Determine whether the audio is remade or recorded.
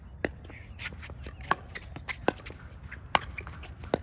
recorded